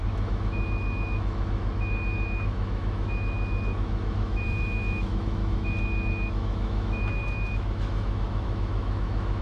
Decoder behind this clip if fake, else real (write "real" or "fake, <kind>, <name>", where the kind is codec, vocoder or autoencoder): fake, autoencoder, DAC-VAE